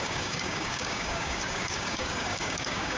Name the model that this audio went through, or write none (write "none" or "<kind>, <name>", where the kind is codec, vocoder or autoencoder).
codec, DAC